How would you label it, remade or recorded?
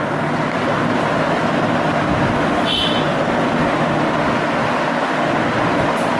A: recorded